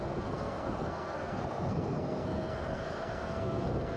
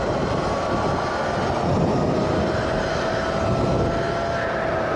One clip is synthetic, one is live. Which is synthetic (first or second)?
first